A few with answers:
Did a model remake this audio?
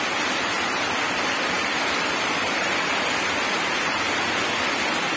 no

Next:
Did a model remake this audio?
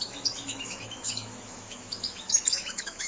yes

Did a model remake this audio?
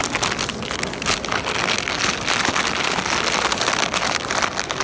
no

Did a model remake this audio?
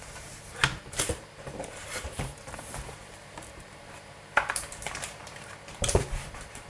yes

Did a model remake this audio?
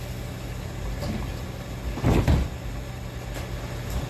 no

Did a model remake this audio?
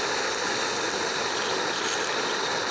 no